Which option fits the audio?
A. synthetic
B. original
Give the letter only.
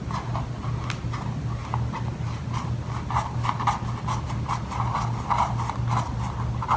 B